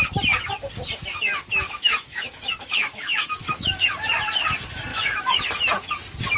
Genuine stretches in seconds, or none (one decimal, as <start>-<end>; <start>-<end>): 0.0-1.3; 4.3-4.9; 5.4-6.4